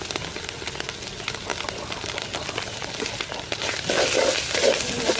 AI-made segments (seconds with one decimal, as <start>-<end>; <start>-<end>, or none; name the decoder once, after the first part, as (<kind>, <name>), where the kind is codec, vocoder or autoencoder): none